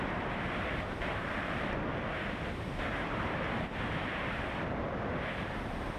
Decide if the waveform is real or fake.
fake